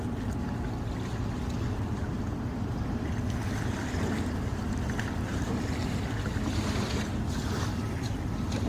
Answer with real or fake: real